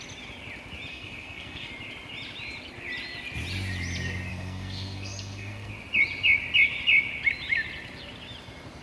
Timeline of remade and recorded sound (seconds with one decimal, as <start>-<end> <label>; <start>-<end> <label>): 0.0-0.9 recorded; 0.9-1.7 remade; 1.7-4.3 recorded; 4.3-5.7 remade; 5.7-8.8 recorded